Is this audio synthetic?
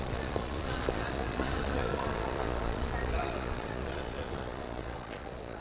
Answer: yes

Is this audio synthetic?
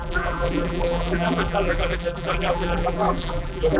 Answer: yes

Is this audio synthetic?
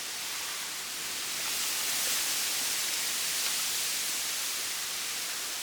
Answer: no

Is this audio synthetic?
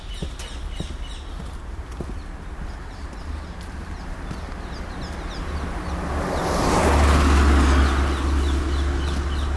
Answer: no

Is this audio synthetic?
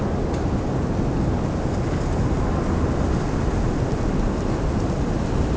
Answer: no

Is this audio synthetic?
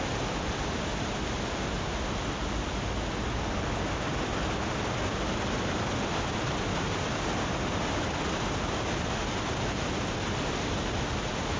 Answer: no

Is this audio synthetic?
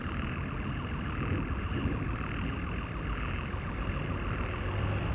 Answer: no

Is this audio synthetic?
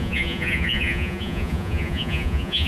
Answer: yes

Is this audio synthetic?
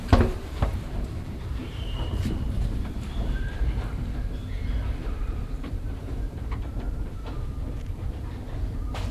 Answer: yes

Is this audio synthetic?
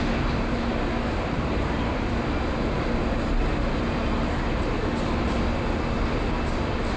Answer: no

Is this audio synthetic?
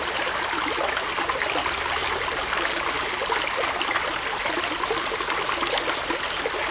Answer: no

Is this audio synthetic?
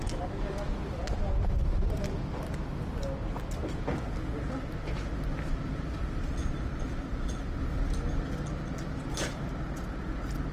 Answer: no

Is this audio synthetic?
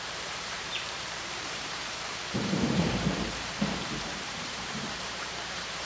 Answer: yes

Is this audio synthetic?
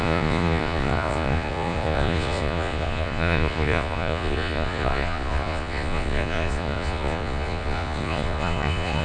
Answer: yes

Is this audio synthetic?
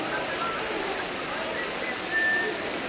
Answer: no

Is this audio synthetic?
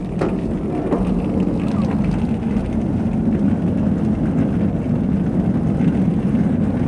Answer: no